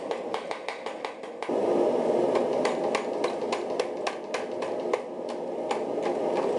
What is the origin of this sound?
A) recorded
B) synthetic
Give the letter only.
A